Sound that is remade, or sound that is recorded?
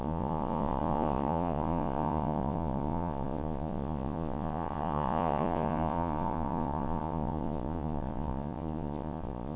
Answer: remade